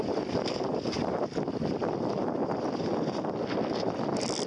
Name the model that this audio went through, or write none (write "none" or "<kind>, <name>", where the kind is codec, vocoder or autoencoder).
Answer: none